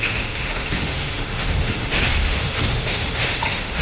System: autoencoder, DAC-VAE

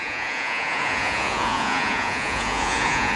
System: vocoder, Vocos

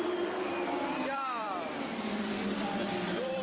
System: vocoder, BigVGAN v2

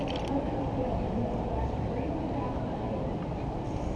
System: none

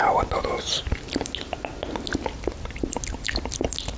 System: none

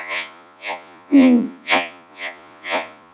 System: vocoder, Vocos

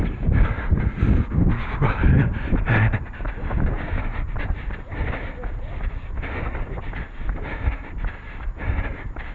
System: none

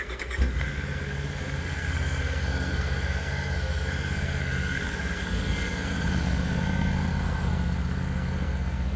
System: codec, SNAC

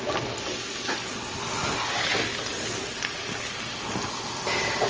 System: none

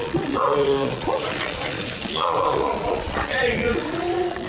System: vocoder, Vocos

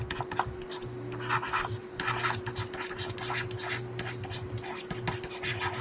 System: none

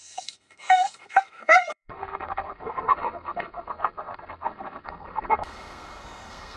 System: codec, SNAC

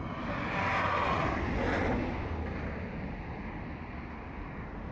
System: none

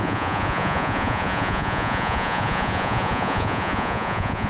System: vocoder, Vocos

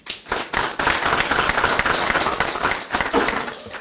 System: none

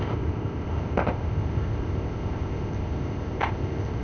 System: codec, ZipCodec